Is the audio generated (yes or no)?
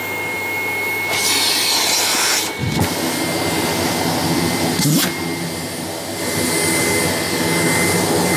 no